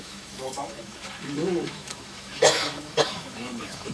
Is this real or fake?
fake